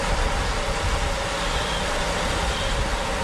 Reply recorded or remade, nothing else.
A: recorded